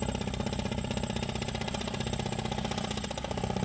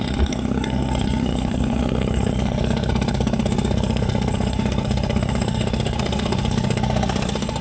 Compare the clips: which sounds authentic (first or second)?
first